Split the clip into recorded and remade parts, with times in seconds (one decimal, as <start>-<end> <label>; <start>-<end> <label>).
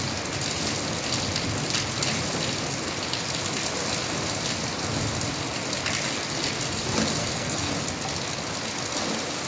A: 0.0-7.2 recorded; 7.2-7.7 remade; 7.7-9.5 recorded